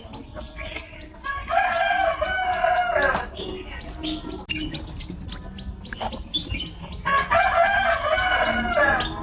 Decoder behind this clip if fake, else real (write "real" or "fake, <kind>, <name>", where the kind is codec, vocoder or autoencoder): real